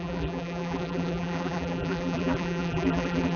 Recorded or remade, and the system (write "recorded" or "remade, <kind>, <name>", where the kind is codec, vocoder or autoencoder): remade, vocoder, BigVGAN v2